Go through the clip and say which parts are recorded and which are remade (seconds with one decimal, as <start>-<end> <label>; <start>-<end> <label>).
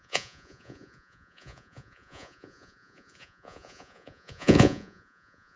0.0-5.6 remade